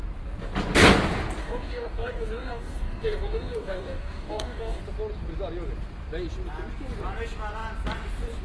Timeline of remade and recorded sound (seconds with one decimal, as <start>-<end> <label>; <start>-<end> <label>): 0.0-1.4 recorded; 1.4-4.8 remade; 4.8-8.4 recorded